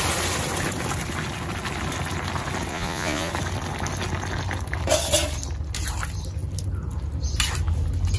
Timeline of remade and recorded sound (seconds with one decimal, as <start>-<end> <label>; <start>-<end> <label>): 0.0-2.7 recorded; 2.7-3.3 remade; 3.3-8.2 recorded